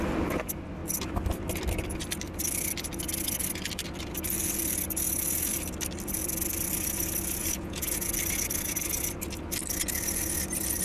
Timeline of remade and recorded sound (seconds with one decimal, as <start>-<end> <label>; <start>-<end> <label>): 0.0-7.4 recorded; 7.4-8.1 remade; 8.1-10.8 recorded